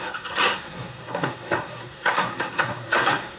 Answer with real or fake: fake